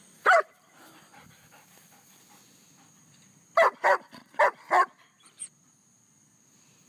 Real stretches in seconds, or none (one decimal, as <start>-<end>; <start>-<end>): 0.6-3.0; 5.7-6.9